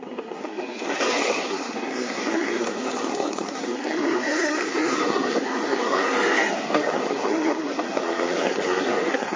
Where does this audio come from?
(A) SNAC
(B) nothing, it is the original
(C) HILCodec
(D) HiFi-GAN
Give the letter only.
A